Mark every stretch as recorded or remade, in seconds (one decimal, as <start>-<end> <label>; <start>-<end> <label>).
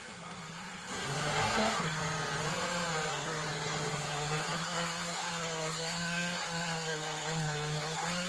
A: 0.0-2.0 remade; 2.0-3.1 recorded; 3.1-8.3 remade